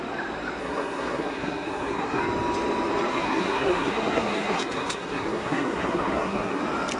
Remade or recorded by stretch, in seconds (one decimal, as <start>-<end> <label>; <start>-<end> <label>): 0.0-0.6 recorded; 0.6-2.2 remade; 2.2-3.1 recorded; 3.1-6.6 remade; 6.6-7.0 recorded